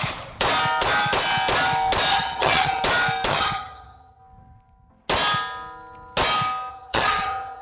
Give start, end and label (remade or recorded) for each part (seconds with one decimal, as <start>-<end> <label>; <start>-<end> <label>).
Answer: 0.0-2.1 recorded; 2.1-2.8 remade; 2.8-3.3 recorded; 3.3-4.2 remade; 4.2-6.7 recorded; 6.7-7.6 remade